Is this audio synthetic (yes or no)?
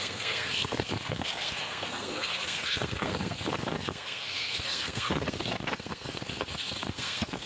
yes